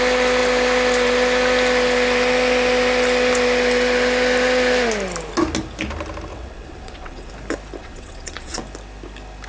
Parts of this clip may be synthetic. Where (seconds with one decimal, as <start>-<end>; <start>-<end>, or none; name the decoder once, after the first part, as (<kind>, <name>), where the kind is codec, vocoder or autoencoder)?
6.3-7.3 (vocoder, WaveNeXt); 7.8-8.6